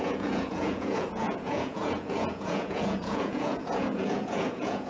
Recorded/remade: remade